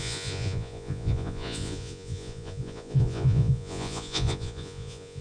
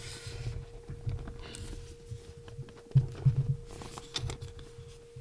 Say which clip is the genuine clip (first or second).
second